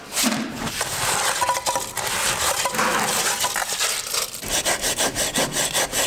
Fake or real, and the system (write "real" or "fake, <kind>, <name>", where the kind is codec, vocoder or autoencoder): real